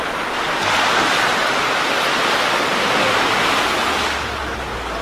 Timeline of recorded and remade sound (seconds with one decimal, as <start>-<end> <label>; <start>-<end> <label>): 0.0-5.0 recorded